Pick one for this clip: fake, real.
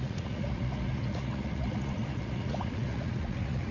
fake